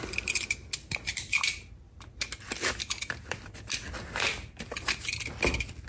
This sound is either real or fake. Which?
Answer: real